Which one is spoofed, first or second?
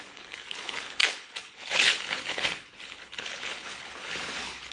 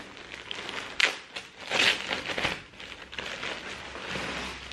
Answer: first